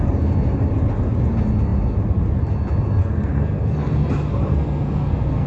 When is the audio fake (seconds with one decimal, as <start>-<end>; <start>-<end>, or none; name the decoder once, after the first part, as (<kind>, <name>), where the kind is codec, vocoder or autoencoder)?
3.0-3.9 (codec, SNAC); 4.5-5.5